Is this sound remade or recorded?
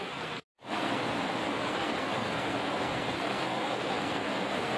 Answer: remade